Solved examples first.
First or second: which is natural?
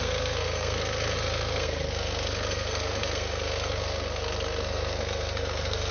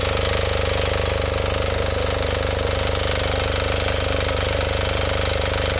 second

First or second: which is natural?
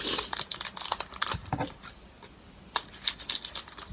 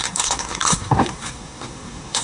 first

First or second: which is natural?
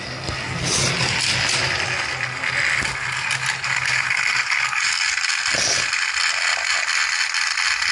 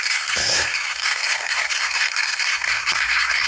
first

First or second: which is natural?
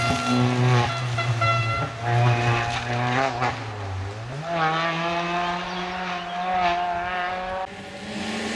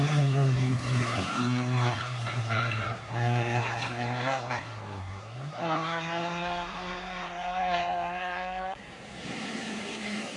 first